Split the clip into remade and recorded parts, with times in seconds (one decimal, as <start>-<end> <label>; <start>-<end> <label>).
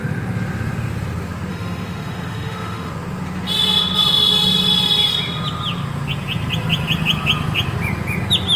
0.0-1.5 recorded; 1.5-2.9 remade; 2.9-8.6 recorded